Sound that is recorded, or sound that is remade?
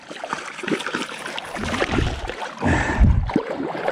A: remade